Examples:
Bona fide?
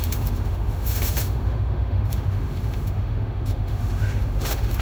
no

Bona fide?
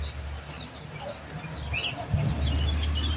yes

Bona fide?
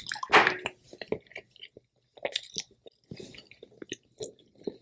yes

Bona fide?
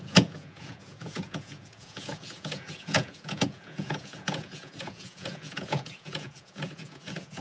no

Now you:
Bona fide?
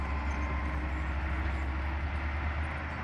yes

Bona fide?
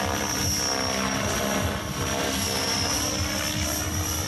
yes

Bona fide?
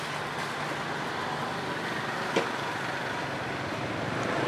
yes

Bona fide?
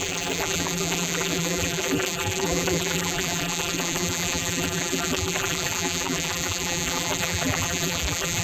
no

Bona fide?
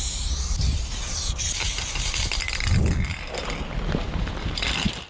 yes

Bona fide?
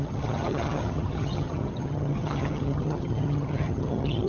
no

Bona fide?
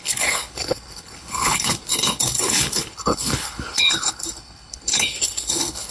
no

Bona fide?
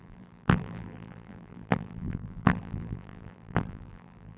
no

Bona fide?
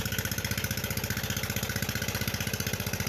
yes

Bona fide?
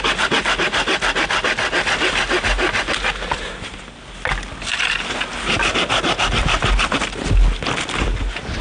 yes